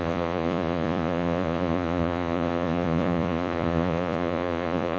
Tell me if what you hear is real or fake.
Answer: fake